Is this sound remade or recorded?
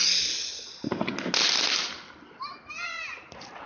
recorded